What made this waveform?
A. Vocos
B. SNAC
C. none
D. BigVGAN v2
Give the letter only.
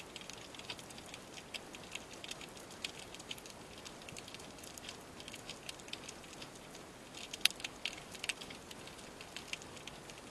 C